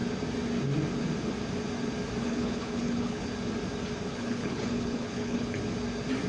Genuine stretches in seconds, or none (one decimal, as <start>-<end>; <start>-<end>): 0.0-2.2; 3.3-4.1; 5.6-6.3